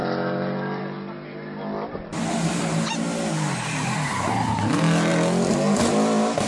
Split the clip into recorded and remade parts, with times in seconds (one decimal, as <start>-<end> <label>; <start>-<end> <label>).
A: 0.0-6.5 recorded